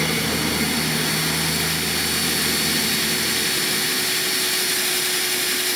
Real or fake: real